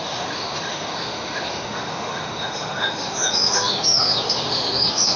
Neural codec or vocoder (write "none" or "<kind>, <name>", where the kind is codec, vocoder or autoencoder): autoencoder, DAC-VAE